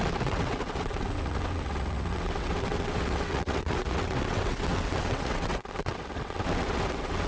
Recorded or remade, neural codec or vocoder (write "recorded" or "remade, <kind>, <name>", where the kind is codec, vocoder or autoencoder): remade, vocoder, WaveNeXt